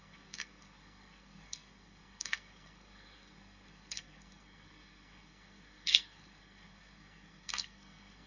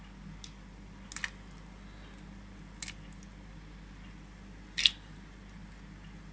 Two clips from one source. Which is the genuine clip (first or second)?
second